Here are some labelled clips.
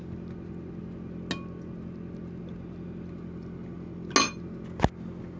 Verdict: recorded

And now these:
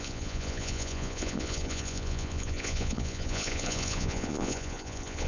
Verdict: remade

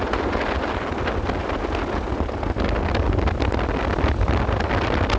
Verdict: recorded